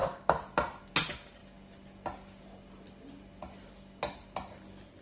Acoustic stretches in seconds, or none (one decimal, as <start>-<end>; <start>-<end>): 0.0-5.0